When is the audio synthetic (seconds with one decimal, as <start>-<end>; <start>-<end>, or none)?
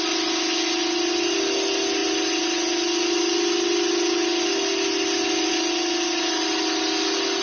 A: none